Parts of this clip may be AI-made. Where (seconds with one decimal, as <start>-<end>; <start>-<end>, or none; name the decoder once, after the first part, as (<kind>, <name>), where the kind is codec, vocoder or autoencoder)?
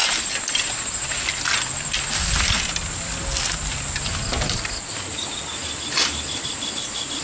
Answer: none